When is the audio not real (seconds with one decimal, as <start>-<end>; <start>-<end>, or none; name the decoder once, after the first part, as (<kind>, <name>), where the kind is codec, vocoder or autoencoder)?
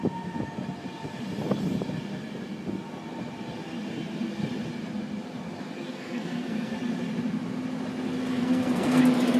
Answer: 5.9-6.7 (codec, SNAC); 8.3-9.0